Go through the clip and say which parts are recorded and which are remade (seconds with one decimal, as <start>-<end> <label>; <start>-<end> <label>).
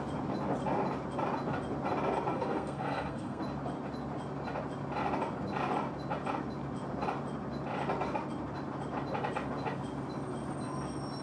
0.0-2.3 recorded; 2.3-3.4 remade; 3.4-11.2 recorded